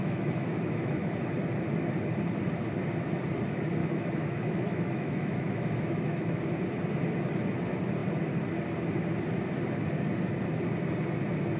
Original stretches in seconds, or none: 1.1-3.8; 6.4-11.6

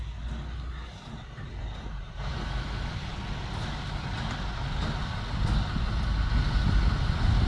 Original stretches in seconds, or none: 0.0-1.6; 2.3-7.5

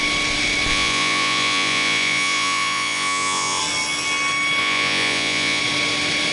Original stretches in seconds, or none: 0.0-0.7; 3.6-4.6; 5.6-6.3

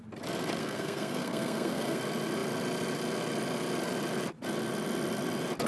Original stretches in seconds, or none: 0.0-0.6; 2.0-5.7

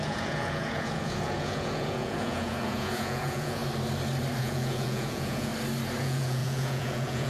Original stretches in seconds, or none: 3.6-4.4; 5.5-6.0